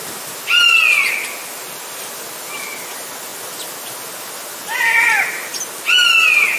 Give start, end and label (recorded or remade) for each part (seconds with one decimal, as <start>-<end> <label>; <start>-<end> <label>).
0.0-6.6 recorded